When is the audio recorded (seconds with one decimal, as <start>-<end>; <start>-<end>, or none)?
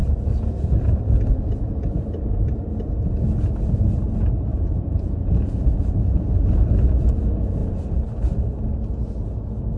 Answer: 1.0-4.5; 6.6-9.8